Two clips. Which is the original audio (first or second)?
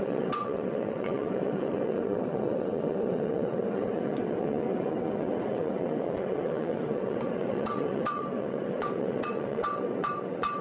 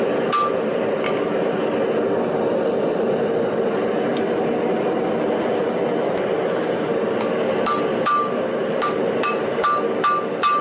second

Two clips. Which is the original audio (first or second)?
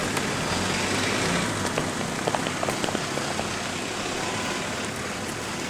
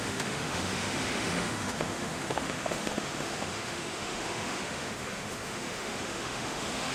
first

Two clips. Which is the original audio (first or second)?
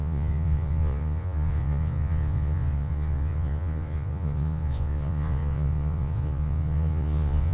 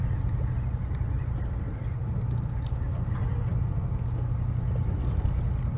second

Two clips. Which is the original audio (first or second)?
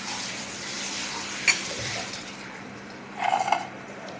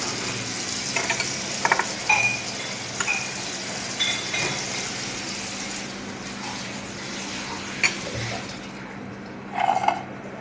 second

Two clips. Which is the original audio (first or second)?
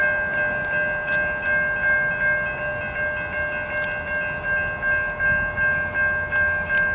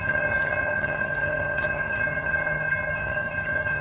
first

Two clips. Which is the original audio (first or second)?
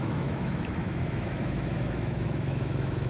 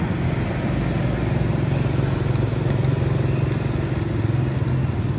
second